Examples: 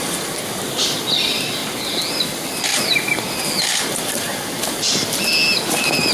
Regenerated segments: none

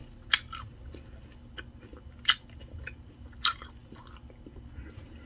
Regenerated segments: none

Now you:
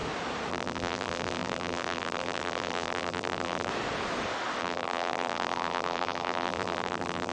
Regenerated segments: 0.5-3.7 (vocoder, BigVGAN v2); 4.6-7.3

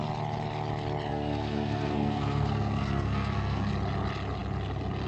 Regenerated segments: 1.1-3.7 (codec, SNAC)

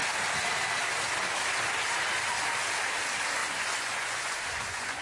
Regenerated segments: 3.4-5.0 (vocoder, Vocos)